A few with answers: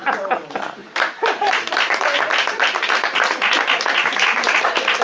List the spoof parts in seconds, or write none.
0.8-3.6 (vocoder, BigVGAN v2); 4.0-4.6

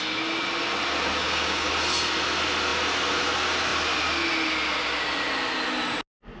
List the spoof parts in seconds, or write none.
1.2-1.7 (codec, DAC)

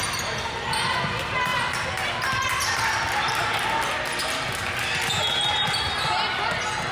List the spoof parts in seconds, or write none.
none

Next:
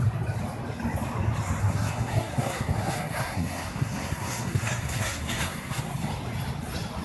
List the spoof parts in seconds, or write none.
1.6-5.8 (codec, SNAC)